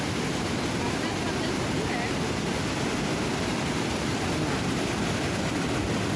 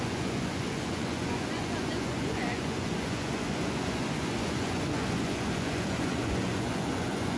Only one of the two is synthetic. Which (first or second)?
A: second